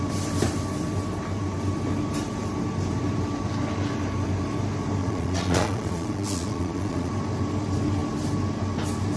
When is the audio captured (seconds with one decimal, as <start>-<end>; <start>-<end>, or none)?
0.0-5.0; 7.1-9.2